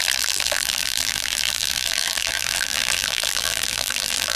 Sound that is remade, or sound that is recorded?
remade